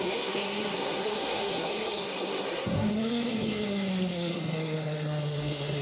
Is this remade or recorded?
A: remade